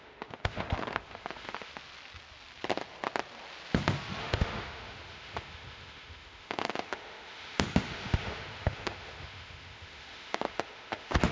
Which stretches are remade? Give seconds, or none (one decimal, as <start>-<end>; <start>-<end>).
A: 0.0-1.7; 4.2-11.3